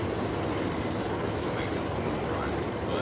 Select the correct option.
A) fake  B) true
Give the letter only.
B